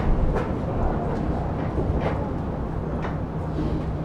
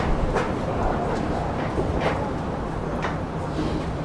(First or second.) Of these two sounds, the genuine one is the first